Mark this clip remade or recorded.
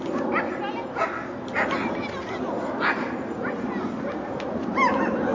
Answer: recorded